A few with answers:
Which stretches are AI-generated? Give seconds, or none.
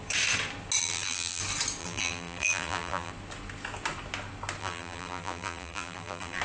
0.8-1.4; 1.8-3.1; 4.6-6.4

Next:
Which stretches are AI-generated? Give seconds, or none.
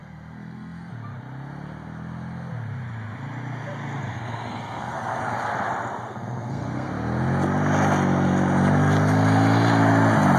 0.0-0.9; 4.1-5.2; 6.0-6.9